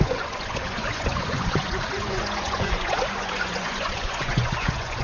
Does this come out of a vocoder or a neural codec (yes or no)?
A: yes